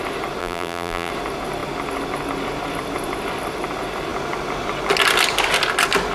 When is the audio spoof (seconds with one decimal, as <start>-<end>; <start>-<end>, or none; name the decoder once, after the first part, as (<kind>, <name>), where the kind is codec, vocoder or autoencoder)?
0.4-1.1 (vocoder, BigVGAN v2)